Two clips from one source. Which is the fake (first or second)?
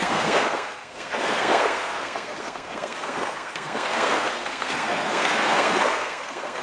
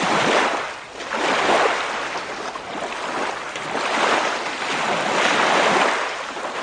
first